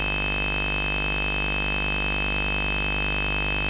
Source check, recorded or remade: recorded